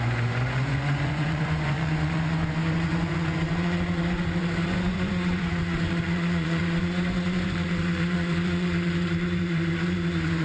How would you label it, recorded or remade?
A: remade